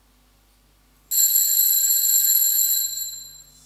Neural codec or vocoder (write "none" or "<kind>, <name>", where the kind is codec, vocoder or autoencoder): none